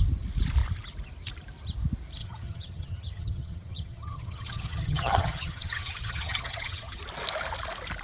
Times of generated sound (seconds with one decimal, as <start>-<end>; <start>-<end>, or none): 2.2-7.0